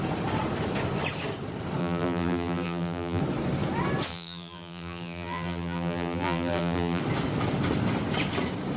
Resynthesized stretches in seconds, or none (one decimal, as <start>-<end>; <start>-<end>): 1.8-3.2; 4.1-7.0